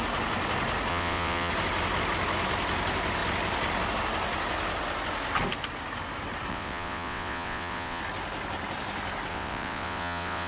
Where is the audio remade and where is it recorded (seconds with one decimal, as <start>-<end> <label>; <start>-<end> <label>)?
0.0-0.9 recorded; 0.9-1.5 remade; 1.5-6.5 recorded; 6.5-8.0 remade; 8.0-9.3 recorded; 9.3-10.5 remade